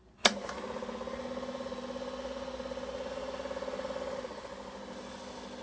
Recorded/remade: recorded